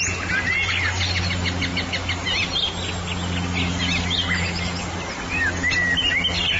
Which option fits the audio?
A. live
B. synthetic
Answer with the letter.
A